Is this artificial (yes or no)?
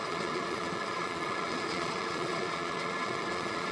yes